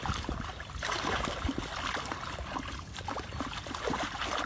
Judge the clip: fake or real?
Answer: real